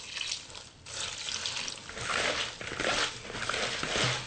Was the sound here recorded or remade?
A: recorded